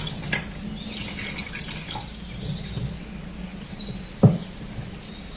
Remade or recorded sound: recorded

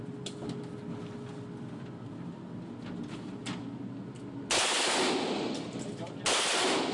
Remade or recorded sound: recorded